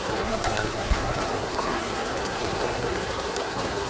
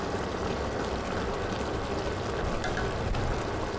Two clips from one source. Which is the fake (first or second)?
first